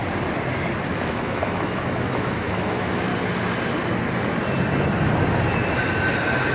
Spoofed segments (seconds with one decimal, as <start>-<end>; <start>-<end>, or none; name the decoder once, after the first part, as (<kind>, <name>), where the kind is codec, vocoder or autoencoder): 0.9-3.1 (autoencoder, DAC-VAE)